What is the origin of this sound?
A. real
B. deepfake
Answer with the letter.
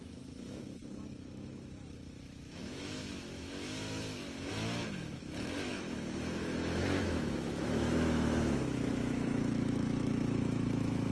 B